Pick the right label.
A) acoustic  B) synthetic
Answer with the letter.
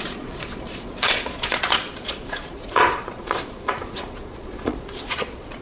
B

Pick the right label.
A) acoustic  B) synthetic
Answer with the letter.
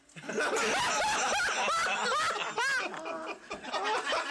A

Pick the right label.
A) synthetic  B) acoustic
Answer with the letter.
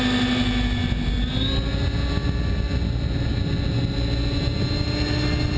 B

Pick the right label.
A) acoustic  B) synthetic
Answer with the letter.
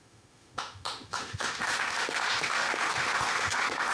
B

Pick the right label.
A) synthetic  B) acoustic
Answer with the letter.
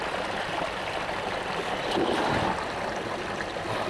B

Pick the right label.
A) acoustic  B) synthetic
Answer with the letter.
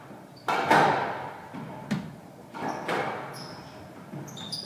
A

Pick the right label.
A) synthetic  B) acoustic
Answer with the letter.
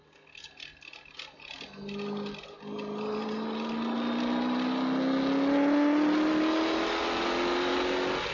B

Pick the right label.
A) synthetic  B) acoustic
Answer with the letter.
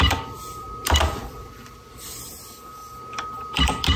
A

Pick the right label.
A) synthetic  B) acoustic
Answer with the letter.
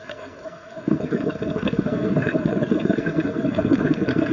A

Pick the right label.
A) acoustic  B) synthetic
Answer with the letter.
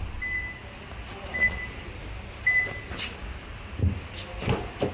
A